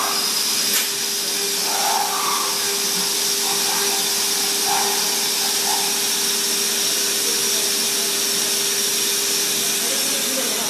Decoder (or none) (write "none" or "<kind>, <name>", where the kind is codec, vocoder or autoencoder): none